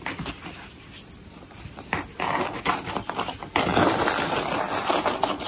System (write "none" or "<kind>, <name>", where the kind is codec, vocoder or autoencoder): none